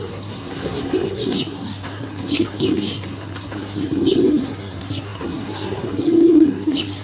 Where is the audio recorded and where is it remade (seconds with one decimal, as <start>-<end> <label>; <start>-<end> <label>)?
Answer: 0.0-7.0 remade